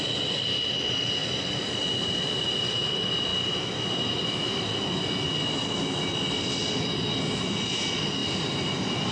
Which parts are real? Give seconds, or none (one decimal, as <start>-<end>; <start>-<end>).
0.0-1.2; 2.8-8.2